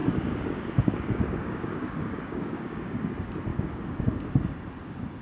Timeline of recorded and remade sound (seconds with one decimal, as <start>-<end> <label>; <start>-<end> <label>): 0.0-3.1 remade; 3.1-3.5 recorded; 3.5-4.0 remade; 4.0-5.2 recorded